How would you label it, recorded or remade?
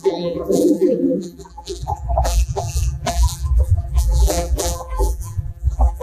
remade